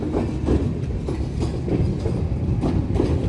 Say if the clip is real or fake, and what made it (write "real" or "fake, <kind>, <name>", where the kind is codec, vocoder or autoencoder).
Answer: real